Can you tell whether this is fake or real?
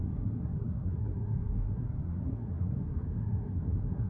fake